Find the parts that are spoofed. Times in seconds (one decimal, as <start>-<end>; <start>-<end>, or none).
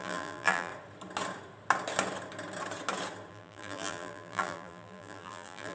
0.0-0.7; 3.3-5.7